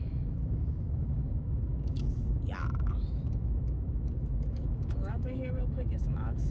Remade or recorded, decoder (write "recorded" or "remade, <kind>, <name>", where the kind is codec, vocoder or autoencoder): remade, autoencoder, DAC-VAE